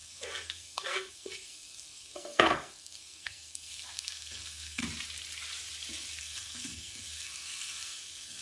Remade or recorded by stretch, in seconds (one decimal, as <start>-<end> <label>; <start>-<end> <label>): 0.0-4.8 remade; 4.8-6.2 recorded; 6.2-8.4 remade